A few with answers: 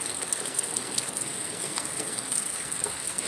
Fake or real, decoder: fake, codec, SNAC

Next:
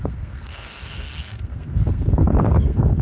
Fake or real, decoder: fake, codec, SNAC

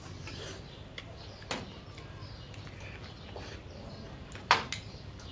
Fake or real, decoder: real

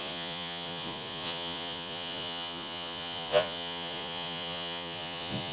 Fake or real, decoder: fake, vocoder, Vocos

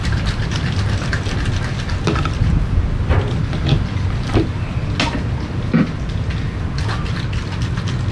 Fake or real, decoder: real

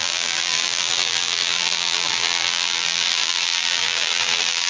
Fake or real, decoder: fake, vocoder, BigVGAN v2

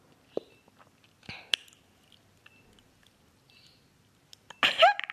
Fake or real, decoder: real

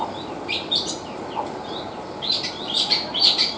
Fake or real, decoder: real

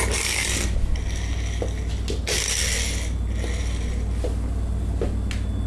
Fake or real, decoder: real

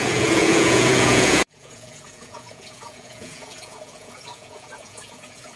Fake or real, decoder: fake, vocoder, Vocos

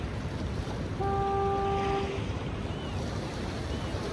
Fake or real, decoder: real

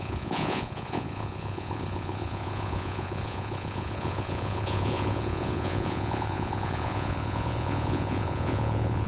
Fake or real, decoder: fake, vocoder, Vocos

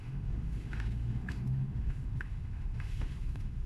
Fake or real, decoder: fake, autoencoder, DAC-VAE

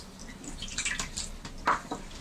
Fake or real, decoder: real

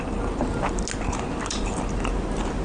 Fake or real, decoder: real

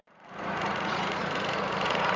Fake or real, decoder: fake, vocoder, Vocos